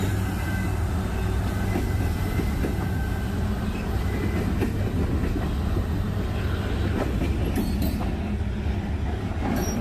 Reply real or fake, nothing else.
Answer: real